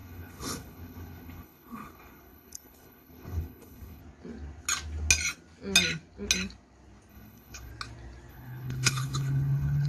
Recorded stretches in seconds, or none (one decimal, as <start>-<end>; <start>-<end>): 4.0-7.1; 7.7-8.3